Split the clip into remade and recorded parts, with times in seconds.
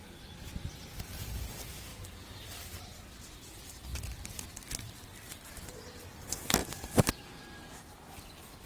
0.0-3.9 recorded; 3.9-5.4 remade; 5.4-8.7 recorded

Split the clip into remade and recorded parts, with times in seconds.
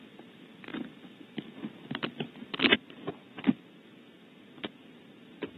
0.0-5.6 recorded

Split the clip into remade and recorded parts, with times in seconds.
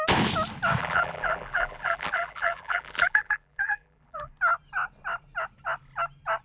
0.0-0.8 recorded; 0.8-4.3 remade; 4.3-6.4 recorded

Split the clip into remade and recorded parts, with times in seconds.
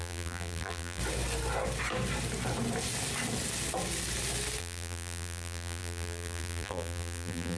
0.0-1.0 remade; 1.0-4.6 recorded; 4.6-7.6 remade